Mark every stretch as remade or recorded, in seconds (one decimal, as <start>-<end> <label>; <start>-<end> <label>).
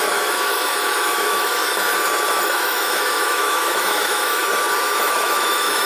0.0-1.6 remade; 1.6-2.3 recorded; 2.3-4.4 remade; 4.4-5.0 recorded; 5.0-5.9 remade